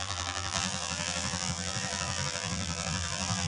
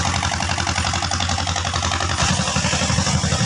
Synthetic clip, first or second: first